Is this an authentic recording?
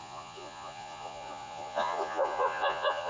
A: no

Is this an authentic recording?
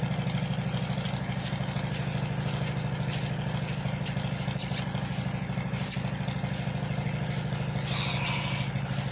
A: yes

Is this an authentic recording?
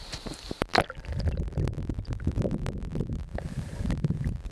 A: yes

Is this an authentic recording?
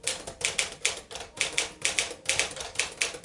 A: yes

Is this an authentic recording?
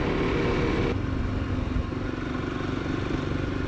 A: yes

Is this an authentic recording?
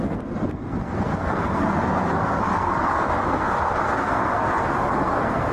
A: no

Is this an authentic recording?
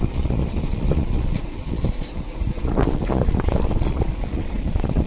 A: no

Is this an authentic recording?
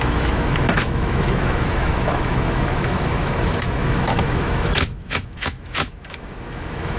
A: no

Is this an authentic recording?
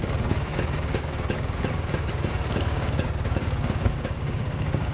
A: no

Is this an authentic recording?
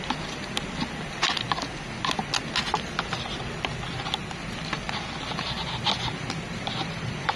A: yes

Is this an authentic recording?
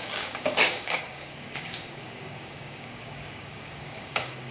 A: no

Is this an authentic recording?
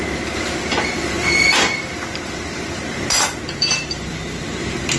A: no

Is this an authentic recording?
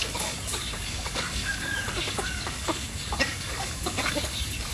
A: no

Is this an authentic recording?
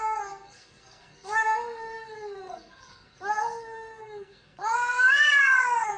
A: no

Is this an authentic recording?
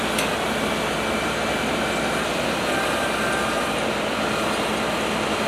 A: yes